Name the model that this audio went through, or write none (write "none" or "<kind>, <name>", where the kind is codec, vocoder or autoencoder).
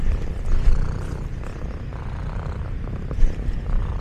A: none